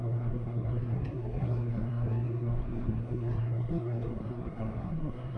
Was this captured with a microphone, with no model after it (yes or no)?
no